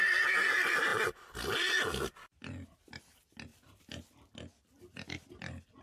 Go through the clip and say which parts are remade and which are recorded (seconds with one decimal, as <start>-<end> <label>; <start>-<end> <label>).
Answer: 0.0-0.9 recorded; 0.9-1.7 remade; 1.7-2.3 recorded; 2.3-2.9 remade; 2.9-3.5 recorded; 3.5-5.3 remade; 5.3-5.8 recorded